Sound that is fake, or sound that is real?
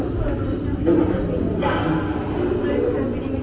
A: real